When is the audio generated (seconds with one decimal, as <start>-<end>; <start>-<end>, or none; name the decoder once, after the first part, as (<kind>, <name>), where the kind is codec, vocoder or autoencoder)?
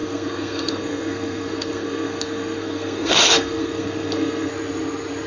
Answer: 0.0-4.5 (codec, SNAC)